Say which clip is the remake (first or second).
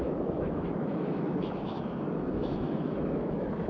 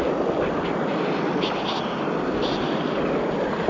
first